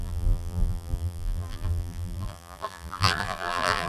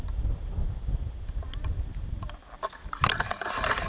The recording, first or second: second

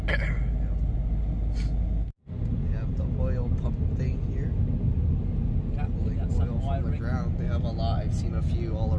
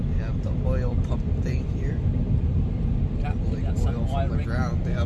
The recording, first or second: first